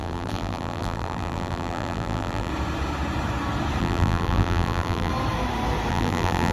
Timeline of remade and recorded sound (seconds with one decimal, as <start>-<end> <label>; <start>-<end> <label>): 0.0-2.5 remade; 2.5-3.8 recorded; 3.8-5.1 remade; 5.1-5.9 recorded; 5.9-6.5 remade